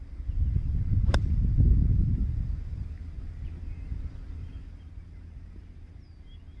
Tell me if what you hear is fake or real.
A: real